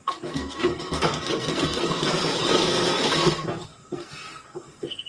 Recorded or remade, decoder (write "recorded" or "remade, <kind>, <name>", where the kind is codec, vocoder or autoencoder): remade, codec, SNAC